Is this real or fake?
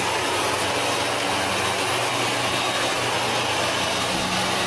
real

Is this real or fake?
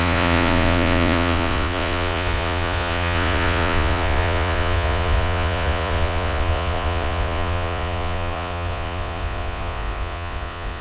fake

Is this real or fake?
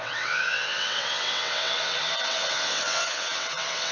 fake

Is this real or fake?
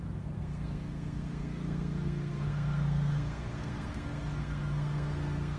fake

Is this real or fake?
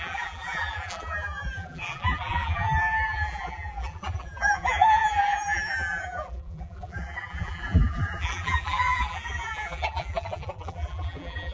fake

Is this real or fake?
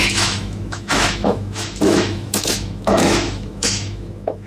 fake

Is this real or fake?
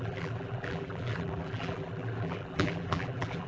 fake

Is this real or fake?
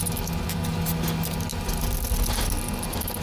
real